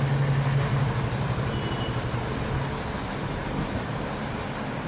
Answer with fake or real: real